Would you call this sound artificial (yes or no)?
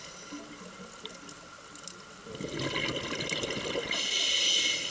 no